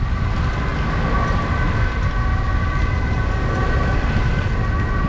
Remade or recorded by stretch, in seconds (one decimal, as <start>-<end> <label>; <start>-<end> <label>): 0.0-5.1 recorded